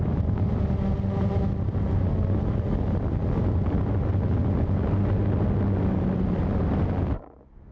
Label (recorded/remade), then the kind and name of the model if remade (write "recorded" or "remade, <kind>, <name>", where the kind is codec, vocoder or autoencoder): recorded